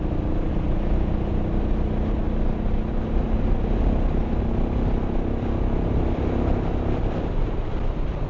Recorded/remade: recorded